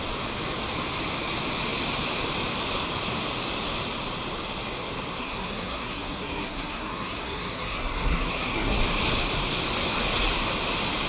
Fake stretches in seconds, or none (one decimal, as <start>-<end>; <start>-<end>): 5.2-8.8

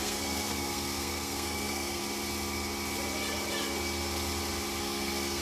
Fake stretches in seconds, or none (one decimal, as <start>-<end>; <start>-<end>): 0.0-2.0; 4.8-5.4

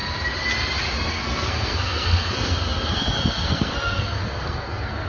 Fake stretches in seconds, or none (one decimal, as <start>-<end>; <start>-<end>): 1.1-5.1

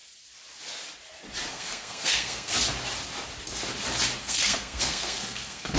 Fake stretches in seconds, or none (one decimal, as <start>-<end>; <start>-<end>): 1.5-2.5; 4.2-5.8

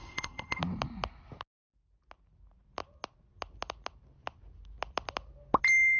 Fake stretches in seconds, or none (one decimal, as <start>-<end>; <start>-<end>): 0.0-0.6

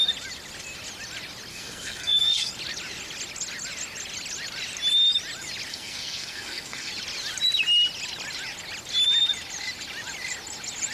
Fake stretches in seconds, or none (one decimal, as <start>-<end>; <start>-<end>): 1.5-2.5; 5.7-6.9